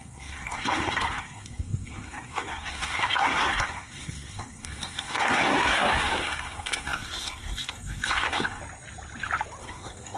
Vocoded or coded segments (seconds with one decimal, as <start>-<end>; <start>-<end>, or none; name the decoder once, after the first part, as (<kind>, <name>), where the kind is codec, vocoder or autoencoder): 0.0-8.6 (codec, SNAC); 9.6-10.2